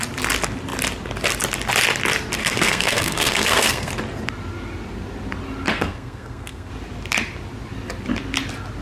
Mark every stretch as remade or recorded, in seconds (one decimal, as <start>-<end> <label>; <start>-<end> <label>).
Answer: 0.0-2.4 recorded; 2.4-3.9 remade; 3.9-5.7 recorded; 5.7-6.7 remade; 6.7-8.8 recorded